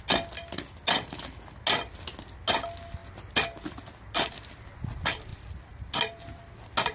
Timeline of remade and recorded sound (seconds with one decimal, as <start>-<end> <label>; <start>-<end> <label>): 0.0-6.9 recorded